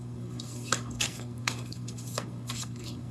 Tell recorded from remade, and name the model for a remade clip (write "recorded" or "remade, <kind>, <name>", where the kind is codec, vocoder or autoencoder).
remade, codec, SNAC